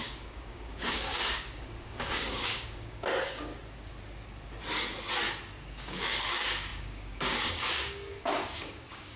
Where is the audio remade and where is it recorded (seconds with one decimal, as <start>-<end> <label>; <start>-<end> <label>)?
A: 0.0-3.5 remade; 3.5-5.7 recorded; 5.7-9.2 remade